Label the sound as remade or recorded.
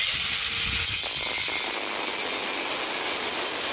recorded